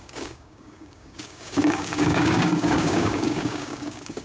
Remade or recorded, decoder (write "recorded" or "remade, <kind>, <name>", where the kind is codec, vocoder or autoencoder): remade, codec, DAC